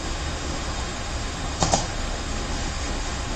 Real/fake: fake